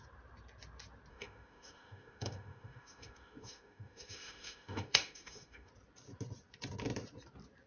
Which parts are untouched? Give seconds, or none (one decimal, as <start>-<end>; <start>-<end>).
0.0-1.1; 5.7-7.7